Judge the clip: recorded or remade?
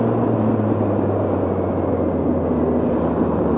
recorded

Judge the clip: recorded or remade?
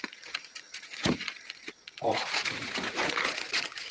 remade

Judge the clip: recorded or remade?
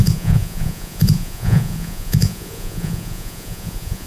remade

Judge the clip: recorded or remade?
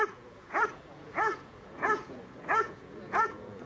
remade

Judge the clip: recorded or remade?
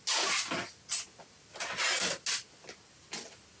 recorded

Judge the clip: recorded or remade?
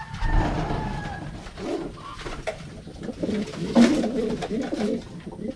recorded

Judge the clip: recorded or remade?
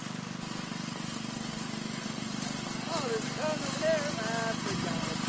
recorded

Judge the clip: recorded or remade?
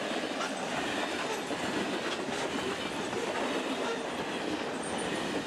recorded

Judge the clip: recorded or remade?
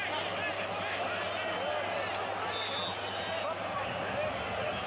recorded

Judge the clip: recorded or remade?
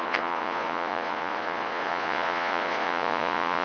remade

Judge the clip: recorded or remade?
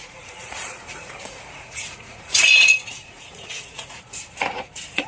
remade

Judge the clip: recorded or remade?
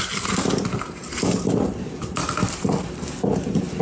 recorded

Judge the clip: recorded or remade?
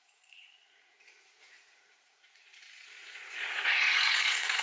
remade